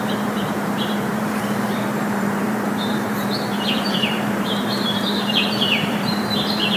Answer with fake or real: fake